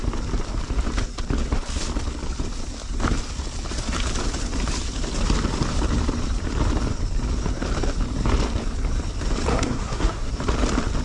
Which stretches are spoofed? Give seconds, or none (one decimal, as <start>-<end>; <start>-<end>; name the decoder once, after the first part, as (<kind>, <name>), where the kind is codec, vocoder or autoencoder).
9.5-10.3 (codec, SNAC)